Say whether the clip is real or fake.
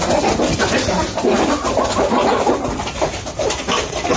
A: real